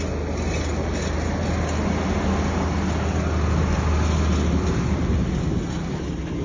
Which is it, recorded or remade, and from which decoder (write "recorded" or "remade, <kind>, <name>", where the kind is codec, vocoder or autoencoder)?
recorded